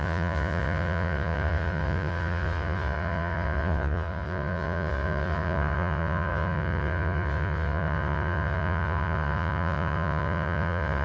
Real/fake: fake